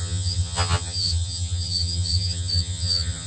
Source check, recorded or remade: remade